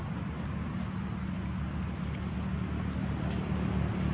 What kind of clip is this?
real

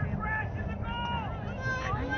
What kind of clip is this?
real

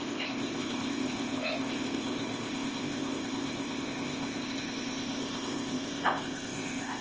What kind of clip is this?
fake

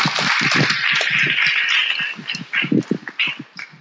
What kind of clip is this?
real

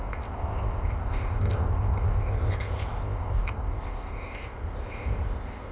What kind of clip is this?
fake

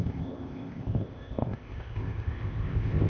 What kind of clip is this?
fake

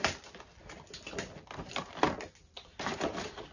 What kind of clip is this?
real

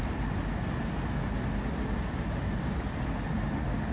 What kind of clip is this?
real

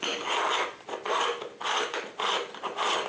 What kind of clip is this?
real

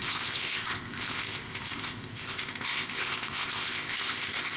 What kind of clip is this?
fake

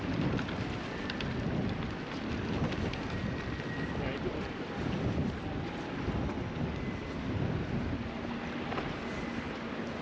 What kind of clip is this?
real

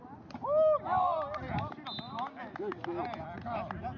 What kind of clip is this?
real